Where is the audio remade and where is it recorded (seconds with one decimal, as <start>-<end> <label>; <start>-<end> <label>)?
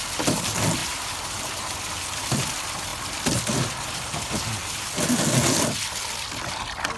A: 0.0-0.8 recorded; 0.8-2.3 remade; 2.3-7.0 recorded